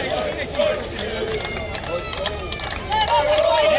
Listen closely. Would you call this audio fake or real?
real